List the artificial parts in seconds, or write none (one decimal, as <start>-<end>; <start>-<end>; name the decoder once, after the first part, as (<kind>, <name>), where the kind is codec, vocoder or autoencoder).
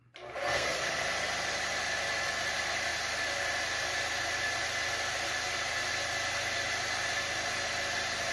0.4-1.0 (codec, SNAC)